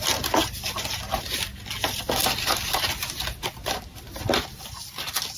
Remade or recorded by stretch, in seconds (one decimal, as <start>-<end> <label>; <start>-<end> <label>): 0.0-2.2 recorded; 2.2-4.9 remade; 4.9-5.4 recorded